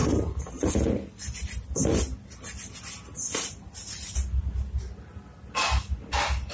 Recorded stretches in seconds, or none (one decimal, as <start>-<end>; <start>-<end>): 0.0-6.5